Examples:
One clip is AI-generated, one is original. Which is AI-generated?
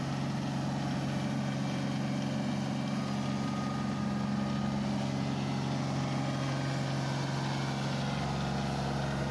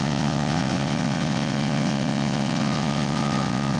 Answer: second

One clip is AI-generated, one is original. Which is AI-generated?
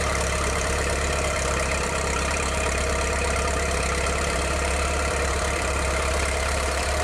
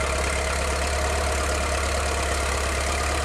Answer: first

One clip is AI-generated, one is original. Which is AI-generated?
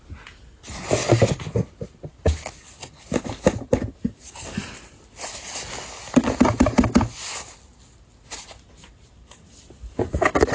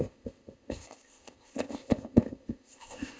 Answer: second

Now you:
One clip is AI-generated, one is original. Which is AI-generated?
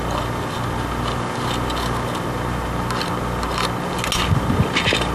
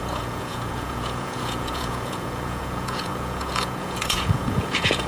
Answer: second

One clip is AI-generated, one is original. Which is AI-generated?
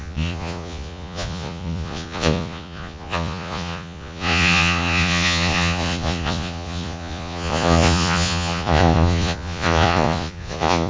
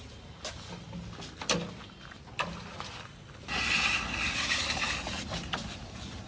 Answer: first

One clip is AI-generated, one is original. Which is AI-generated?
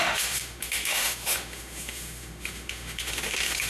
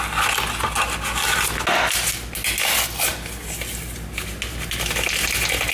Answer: first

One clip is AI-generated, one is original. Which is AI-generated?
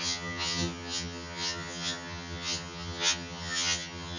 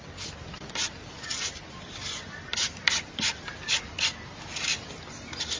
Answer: first